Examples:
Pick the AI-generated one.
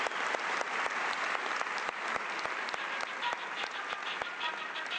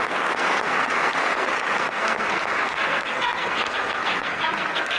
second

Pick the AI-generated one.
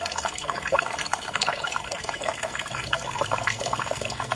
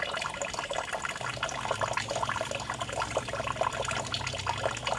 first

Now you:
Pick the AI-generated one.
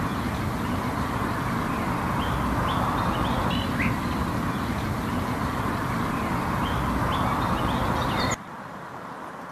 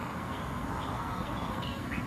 second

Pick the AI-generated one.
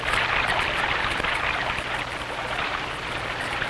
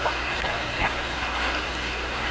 second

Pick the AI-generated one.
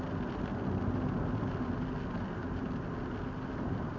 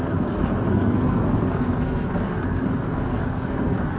second